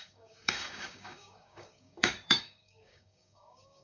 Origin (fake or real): fake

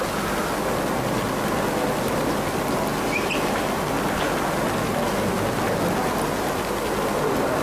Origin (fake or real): real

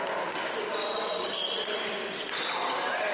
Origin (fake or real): real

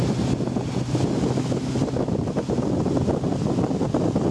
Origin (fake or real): real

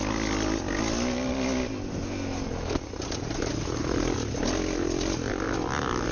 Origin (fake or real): real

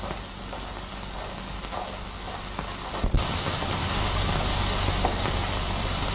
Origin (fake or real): real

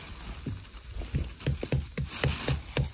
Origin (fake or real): real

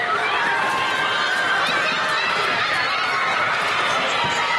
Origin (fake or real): real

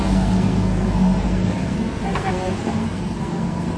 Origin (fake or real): fake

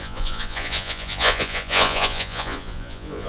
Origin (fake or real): fake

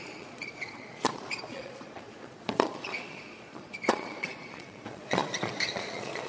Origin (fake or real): fake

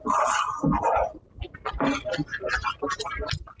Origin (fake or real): real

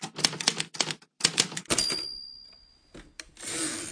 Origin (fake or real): real